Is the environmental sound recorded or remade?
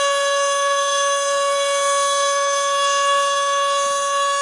remade